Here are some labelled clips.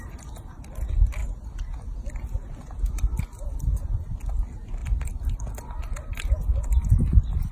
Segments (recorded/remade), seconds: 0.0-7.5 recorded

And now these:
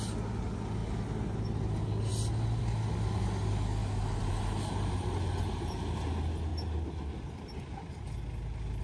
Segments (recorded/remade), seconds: 0.0-8.8 recorded

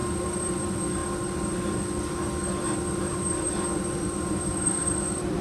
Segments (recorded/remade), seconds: 0.0-1.0 remade; 1.0-3.5 recorded; 3.5-5.4 remade

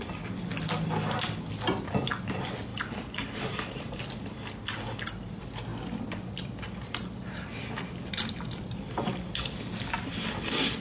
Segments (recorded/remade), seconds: 0.0-2.7 recorded; 2.7-3.8 remade; 3.8-10.8 recorded

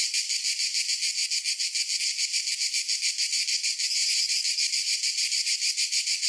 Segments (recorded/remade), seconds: 0.0-4.0 recorded; 4.0-6.3 remade

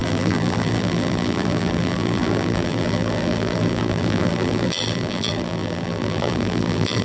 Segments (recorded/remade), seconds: 0.0-7.0 remade

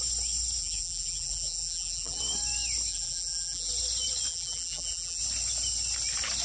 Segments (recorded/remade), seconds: 0.0-0.6 recorded; 0.6-2.2 remade; 2.2-2.9 recorded; 2.9-3.7 remade; 3.7-4.3 recorded; 4.3-5.2 remade; 5.2-6.4 recorded

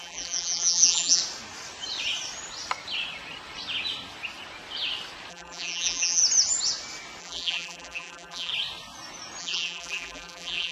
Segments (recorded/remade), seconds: 0.0-1.2 remade; 1.2-5.3 recorded; 5.3-6.2 remade; 6.2-7.2 recorded; 7.2-8.5 remade; 8.5-9.4 recorded; 9.4-10.7 remade